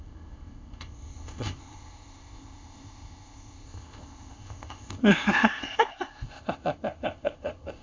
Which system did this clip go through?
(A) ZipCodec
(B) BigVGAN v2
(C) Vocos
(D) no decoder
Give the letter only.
A